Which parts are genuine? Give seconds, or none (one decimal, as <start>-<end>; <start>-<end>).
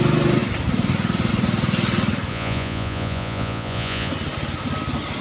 0.0-2.3; 4.1-5.2